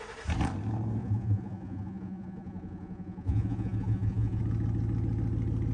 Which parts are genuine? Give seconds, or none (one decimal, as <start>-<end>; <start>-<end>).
0.0-1.0; 4.4-5.7

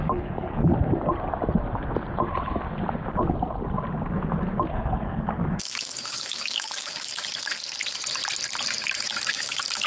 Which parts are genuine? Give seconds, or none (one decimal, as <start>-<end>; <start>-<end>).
0.6-4.7; 7.6-9.0

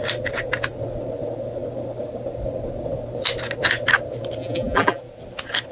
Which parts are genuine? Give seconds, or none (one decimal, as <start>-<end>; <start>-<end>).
0.0-4.4; 5.0-5.7